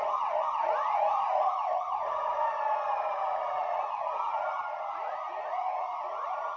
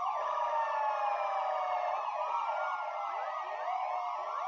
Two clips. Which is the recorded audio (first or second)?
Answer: second